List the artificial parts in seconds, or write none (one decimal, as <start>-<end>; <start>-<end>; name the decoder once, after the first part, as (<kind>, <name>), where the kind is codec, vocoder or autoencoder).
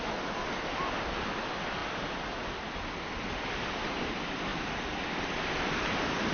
4.5-5.1 (vocoder, BigVGAN v2)